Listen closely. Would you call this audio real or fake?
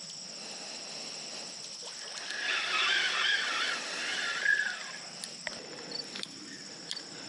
real